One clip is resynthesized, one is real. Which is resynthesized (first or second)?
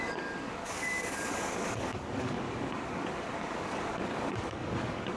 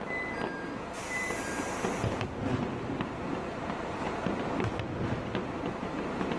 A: first